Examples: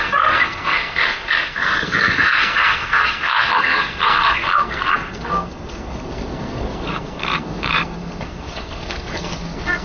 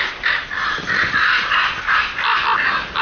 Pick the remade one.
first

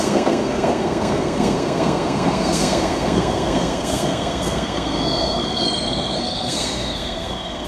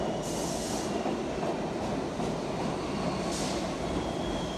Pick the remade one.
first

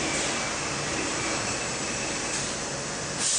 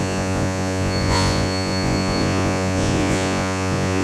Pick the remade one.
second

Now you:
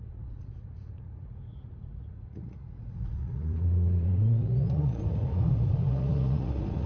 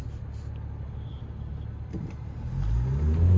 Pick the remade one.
first